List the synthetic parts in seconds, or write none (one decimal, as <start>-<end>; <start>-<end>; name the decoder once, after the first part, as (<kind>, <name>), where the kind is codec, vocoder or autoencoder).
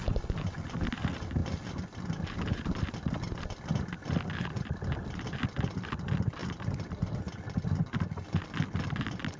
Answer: none